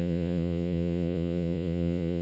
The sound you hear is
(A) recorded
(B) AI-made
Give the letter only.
B